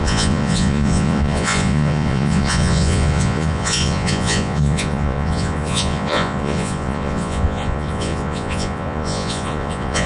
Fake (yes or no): yes